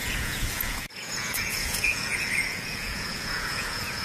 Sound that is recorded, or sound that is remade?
remade